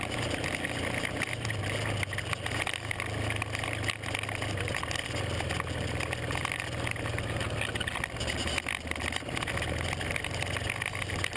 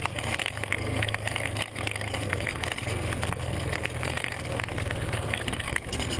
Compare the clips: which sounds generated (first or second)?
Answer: second